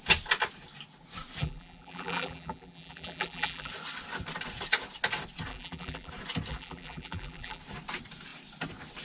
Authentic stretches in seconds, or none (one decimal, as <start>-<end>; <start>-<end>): 0.0-1.4; 3.7-5.5; 6.1-6.5; 7.6-9.0